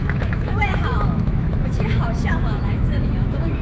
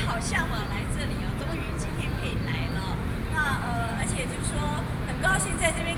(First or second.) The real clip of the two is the second